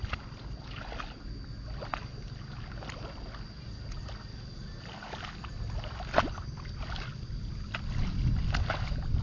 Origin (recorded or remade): recorded